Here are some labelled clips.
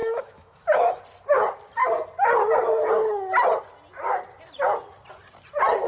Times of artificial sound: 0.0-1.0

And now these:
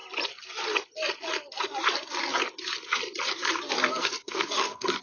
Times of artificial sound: 3.9-5.0

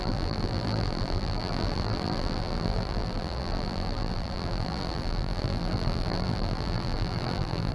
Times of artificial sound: 0.0-7.7